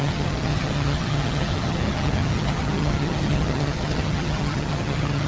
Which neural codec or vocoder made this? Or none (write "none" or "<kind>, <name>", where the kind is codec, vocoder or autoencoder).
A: vocoder, HiFi-GAN